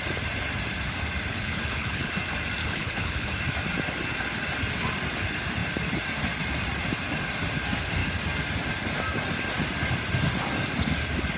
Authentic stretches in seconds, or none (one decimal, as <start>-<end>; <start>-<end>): 0.0-1.3; 2.1-2.6; 3.3-11.4